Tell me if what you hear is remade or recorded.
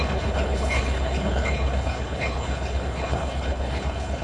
remade